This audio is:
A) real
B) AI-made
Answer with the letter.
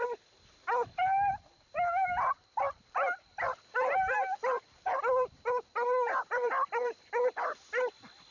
A